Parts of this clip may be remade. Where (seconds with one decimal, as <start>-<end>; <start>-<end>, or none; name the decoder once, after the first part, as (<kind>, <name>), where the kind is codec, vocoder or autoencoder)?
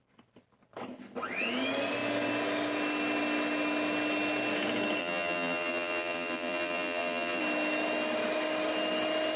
5.0-7.4 (vocoder, BigVGAN v2)